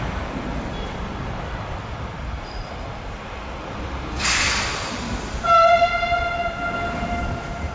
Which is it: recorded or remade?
recorded